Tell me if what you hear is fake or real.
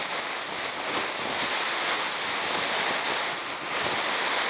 real